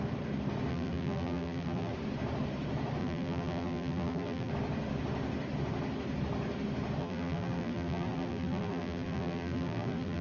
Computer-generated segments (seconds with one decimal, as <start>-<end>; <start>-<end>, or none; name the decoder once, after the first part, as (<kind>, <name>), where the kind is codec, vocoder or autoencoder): 0.7-1.9 (vocoder, BigVGAN v2); 3.0-4.5; 7.0-10.2